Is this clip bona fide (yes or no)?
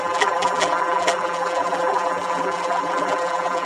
no